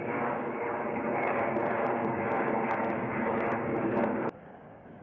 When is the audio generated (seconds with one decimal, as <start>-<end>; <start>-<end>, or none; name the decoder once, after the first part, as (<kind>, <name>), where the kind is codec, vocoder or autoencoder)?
0.0-5.0 (codec, DAC)